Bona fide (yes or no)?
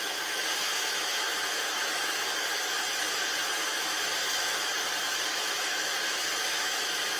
no